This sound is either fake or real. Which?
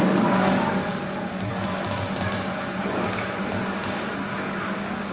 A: fake